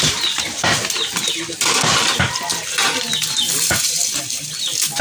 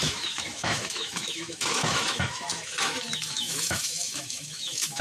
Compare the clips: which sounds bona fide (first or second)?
first